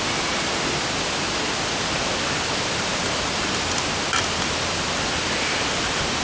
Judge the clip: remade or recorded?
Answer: recorded